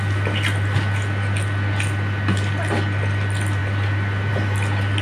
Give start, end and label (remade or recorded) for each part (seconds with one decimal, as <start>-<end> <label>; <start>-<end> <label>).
0.0-5.0 recorded